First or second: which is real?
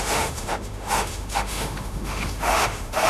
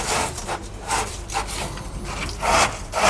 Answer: second